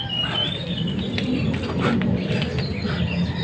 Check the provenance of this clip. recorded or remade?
recorded